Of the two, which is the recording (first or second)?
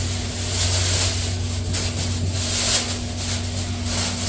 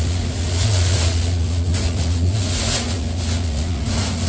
first